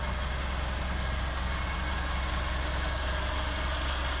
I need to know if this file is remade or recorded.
recorded